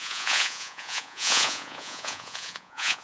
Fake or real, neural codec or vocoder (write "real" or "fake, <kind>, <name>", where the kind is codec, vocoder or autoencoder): fake, vocoder, Vocos